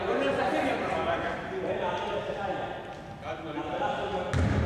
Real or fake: real